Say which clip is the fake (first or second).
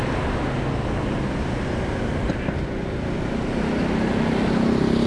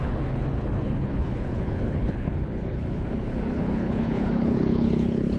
second